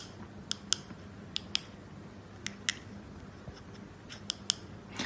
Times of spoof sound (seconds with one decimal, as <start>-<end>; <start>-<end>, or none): none